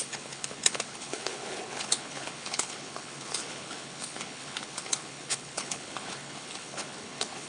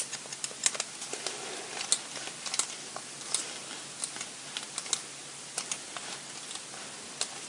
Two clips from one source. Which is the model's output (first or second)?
first